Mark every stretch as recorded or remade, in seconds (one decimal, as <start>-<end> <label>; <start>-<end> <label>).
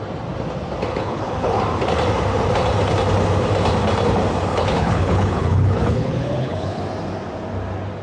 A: 0.0-0.9 recorded; 0.9-1.6 remade; 1.6-4.5 recorded; 4.5-6.8 remade; 6.8-8.0 recorded